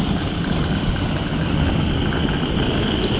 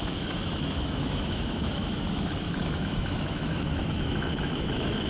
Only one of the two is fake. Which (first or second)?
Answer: second